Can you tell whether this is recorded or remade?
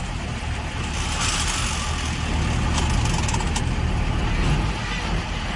recorded